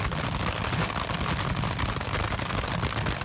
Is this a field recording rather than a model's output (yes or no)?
yes